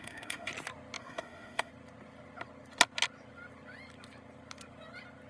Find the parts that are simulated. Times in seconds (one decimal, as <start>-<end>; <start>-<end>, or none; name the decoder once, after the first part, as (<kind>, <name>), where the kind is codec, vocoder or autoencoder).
0.0-0.5 (autoencoder, DAC-VAE); 1.0-1.7